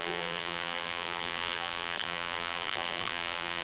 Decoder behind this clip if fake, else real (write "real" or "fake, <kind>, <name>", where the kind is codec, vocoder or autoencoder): fake, vocoder, BigVGAN v2